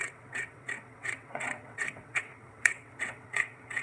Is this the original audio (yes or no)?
no